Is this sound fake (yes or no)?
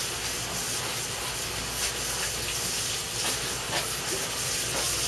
no